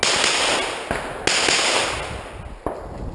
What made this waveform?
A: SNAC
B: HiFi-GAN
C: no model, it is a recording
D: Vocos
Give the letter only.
C